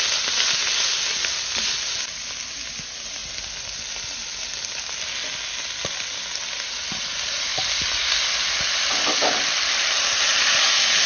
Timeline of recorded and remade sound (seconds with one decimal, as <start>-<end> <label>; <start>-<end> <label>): 0.0-7.5 recorded; 7.5-8.9 remade; 8.9-11.1 recorded

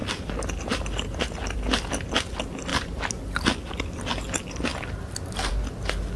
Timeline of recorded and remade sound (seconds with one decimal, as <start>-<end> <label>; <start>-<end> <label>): 0.0-1.9 remade; 1.9-2.7 recorded; 2.7-3.2 remade; 3.2-6.2 recorded

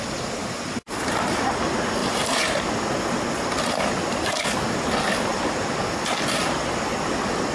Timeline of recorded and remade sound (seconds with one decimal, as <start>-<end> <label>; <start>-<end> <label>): 0.0-0.4 recorded; 0.4-1.5 remade; 1.5-2.0 recorded; 2.0-2.7 remade; 2.7-5.3 recorded; 5.3-6.0 remade; 6.0-7.5 recorded

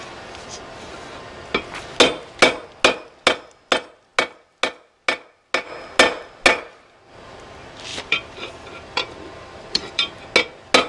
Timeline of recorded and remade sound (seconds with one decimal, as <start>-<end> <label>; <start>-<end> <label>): 0.0-7.9 recorded; 7.9-10.2 remade; 10.2-10.9 recorded

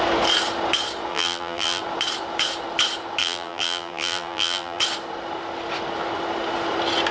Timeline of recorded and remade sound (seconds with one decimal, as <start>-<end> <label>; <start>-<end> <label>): 0.0-1.1 recorded; 1.1-1.8 remade; 1.8-3.2 recorded; 3.2-4.8 remade; 4.8-7.1 recorded

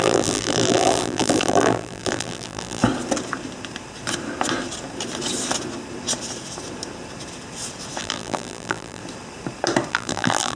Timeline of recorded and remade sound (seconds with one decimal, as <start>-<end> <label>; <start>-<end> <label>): 0.0-2.8 remade; 2.8-8.0 recorded; 8.0-9.0 remade; 9.0-9.9 recorded; 9.9-10.6 remade

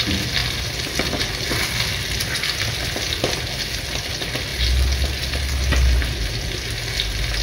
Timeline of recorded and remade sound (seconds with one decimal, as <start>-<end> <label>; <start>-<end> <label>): 0.0-0.4 recorded; 0.4-1.4 remade; 1.4-7.4 recorded

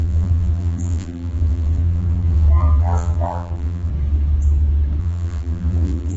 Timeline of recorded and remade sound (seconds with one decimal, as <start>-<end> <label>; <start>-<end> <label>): 0.0-3.9 remade; 3.9-5.0 recorded; 5.0-6.2 remade